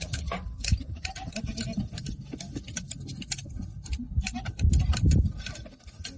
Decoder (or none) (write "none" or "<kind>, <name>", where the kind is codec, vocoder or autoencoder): none